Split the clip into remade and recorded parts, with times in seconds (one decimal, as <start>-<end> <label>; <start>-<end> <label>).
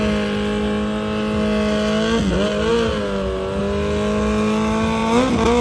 0.0-5.6 recorded